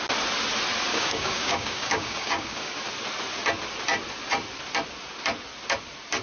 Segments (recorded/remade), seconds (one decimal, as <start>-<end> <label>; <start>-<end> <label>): 0.0-0.9 recorded; 0.9-2.8 remade; 2.8-6.2 recorded